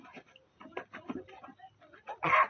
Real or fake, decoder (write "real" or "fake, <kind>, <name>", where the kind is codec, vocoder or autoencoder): real